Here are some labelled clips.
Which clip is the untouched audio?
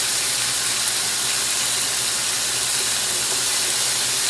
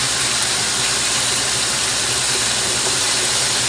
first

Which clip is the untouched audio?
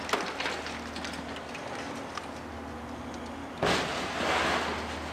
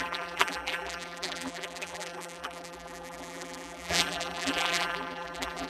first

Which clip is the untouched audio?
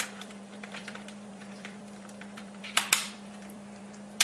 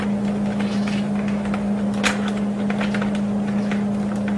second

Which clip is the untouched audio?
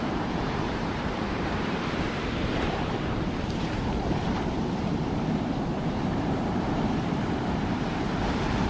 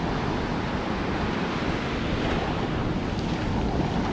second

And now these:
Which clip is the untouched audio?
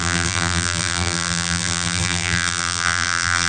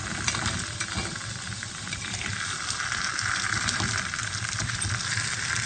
second